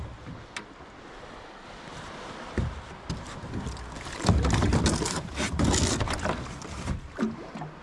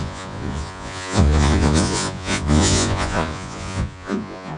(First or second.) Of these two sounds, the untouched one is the first